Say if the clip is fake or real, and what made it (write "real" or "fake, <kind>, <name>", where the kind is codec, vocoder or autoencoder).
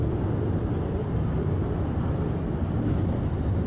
real